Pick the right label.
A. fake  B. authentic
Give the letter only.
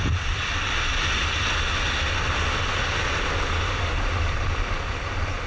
B